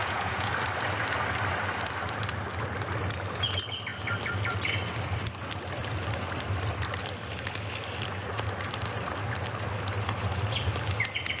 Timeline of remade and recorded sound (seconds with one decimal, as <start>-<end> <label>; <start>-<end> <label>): 0.0-0.5 remade; 0.5-11.4 recorded